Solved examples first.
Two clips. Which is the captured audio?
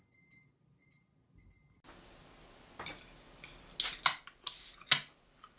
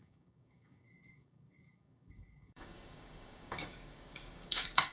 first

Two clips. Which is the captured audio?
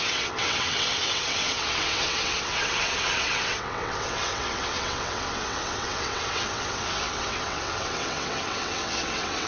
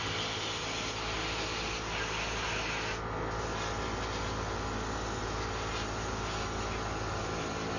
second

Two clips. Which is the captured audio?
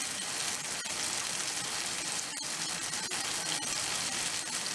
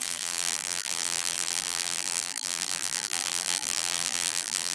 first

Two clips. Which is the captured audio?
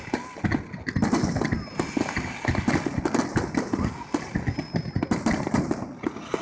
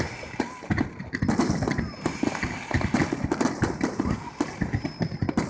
first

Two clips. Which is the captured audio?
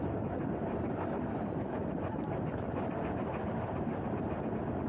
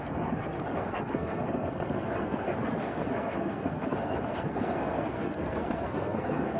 first